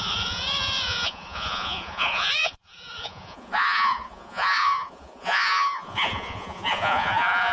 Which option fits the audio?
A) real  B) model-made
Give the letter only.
B